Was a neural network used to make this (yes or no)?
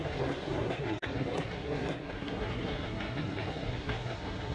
yes